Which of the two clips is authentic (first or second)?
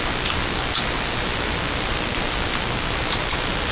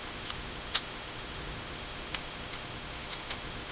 first